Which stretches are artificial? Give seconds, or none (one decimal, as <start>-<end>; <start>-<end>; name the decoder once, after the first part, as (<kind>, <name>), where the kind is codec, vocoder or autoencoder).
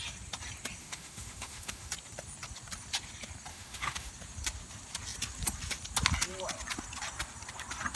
0.8-1.9 (autoencoder, DAC-VAE); 3.5-4.1